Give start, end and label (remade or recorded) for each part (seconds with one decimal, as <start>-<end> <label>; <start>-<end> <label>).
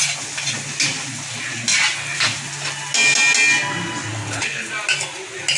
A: 0.0-4.1 recorded; 4.1-4.7 remade; 4.7-5.6 recorded